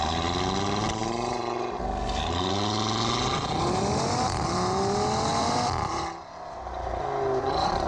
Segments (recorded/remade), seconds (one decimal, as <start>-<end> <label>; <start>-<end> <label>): 0.0-5.3 recorded; 5.3-6.0 remade; 6.0-7.9 recorded